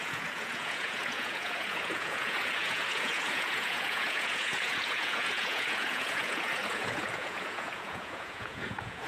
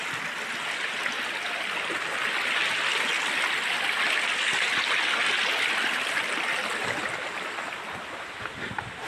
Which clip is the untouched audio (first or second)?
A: second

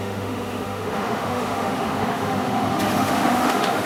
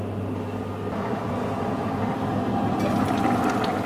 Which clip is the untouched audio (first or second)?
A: second